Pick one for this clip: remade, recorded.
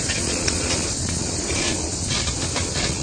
remade